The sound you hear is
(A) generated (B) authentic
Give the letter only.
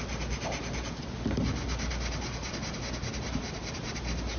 B